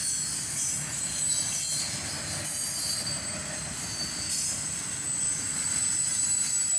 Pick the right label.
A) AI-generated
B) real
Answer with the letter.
B